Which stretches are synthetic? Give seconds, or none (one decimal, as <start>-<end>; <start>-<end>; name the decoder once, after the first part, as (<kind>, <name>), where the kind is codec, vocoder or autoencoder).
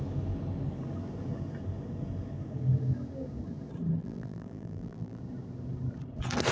4.0-5.2 (vocoder, BigVGAN v2)